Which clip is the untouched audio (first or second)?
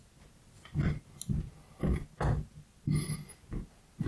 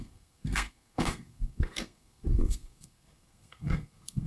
first